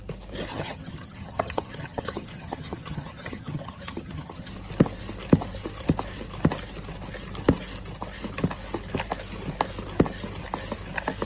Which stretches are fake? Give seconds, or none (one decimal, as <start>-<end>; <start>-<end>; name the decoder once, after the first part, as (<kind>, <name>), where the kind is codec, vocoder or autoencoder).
0.5-4.5 (vocoder, HiFi-GAN)